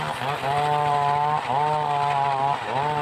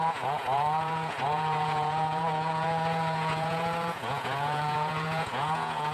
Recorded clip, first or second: first